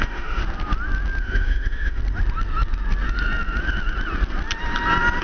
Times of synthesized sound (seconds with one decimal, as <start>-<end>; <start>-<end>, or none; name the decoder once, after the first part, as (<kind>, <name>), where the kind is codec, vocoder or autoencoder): 0.0-0.4 (autoencoder, DAC-VAE); 1.2-2.0